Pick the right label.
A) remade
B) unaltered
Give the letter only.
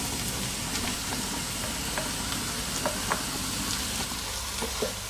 B